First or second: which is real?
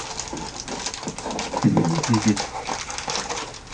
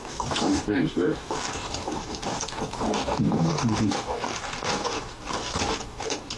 first